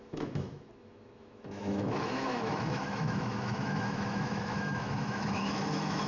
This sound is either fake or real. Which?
fake